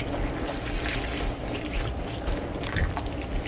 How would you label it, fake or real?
fake